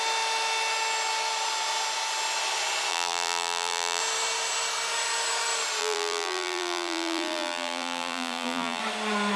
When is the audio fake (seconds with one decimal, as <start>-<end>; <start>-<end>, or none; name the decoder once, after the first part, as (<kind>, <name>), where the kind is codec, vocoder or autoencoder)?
2.9-4.0 (vocoder, BigVGAN v2); 5.8-8.8